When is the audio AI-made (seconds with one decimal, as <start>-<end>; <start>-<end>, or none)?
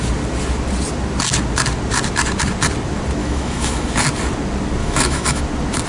3.2-3.9; 4.8-5.4